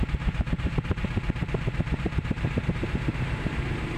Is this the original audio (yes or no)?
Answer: no